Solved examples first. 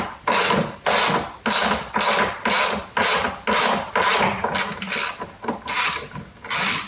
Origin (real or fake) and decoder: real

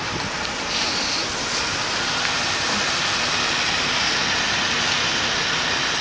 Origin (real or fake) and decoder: real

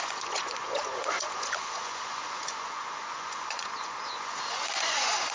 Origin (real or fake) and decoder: fake, vocoder, Vocos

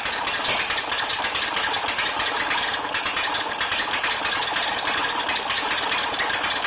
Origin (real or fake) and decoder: real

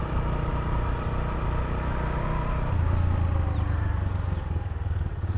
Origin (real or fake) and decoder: real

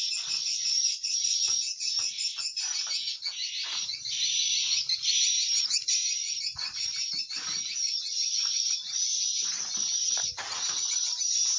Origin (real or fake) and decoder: real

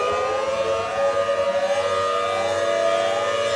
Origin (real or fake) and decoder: real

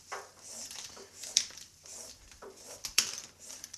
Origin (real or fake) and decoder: fake, vocoder, BigVGAN v2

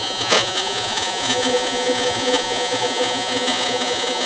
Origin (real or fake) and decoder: fake, vocoder, Vocos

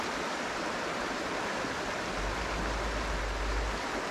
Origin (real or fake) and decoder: real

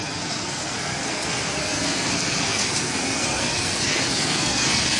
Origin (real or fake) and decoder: fake, codec, SNAC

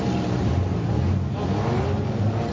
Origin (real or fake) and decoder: real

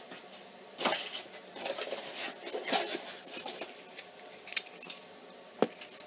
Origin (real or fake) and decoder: real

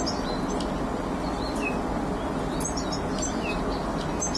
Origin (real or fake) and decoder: real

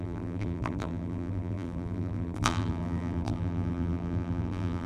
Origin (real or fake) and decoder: fake, vocoder, BigVGAN v2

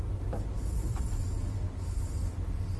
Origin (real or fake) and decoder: real